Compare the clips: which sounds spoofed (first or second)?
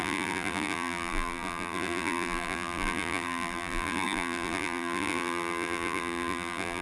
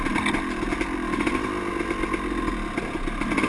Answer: first